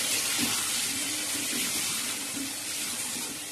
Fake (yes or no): yes